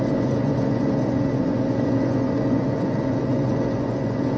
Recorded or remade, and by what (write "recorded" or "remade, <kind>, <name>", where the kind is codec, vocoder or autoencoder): remade, vocoder, Vocos